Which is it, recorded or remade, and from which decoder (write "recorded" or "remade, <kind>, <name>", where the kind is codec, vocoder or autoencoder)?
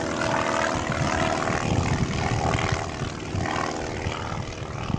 recorded